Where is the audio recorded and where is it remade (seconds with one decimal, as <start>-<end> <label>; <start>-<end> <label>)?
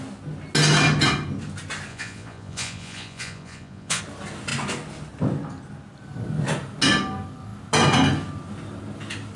0.0-1.9 recorded; 1.9-4.0 remade; 4.0-9.4 recorded